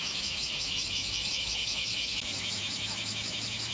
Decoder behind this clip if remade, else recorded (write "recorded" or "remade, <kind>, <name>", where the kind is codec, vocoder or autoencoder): remade, autoencoder, DAC-VAE